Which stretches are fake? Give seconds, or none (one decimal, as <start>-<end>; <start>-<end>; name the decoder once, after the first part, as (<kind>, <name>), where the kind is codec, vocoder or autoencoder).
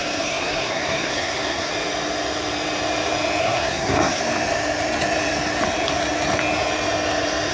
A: 0.0-1.7 (codec, SNAC); 3.4-4.2